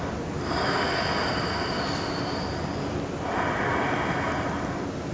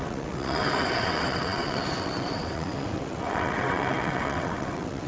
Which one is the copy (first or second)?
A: second